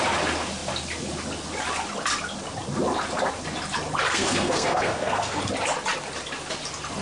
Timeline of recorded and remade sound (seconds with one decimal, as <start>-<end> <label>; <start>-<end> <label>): 0.0-4.1 recorded; 4.1-5.5 remade; 5.5-7.0 recorded